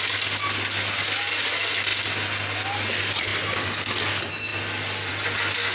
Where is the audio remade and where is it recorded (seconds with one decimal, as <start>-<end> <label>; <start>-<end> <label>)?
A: 0.0-5.7 recorded